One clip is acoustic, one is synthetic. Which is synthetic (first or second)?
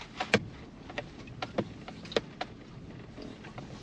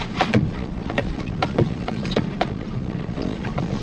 second